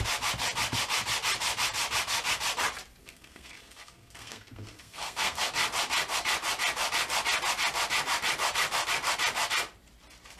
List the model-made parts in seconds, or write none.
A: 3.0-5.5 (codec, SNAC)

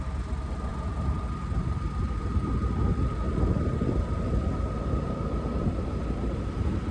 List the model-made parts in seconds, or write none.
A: none